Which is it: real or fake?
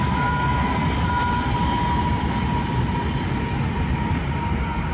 real